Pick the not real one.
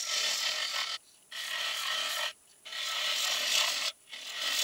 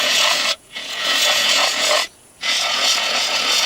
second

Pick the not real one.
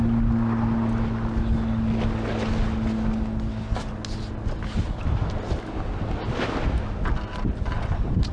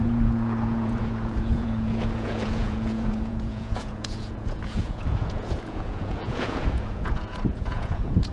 second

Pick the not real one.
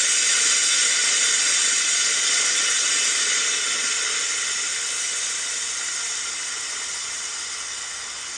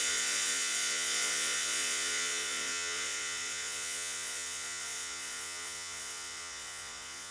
second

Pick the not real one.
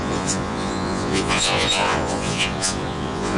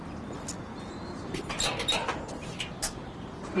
first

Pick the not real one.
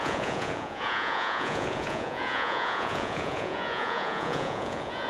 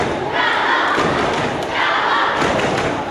first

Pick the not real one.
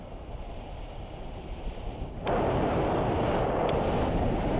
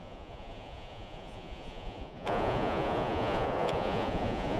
second